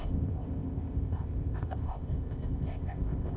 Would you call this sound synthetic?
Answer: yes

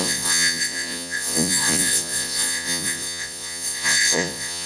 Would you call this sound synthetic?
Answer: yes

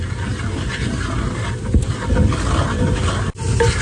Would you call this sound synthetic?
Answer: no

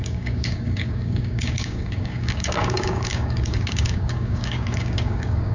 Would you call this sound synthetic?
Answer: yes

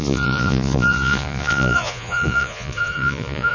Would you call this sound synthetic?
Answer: yes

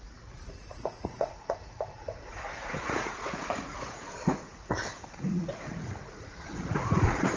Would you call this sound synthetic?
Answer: yes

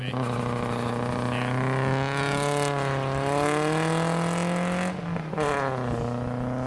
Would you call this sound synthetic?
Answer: no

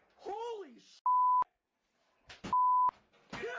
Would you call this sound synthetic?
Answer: no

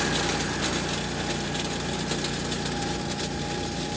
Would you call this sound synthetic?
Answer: no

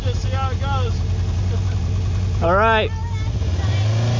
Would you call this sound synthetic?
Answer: no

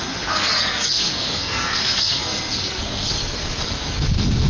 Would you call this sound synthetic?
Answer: yes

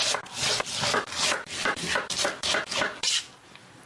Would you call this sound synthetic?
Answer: no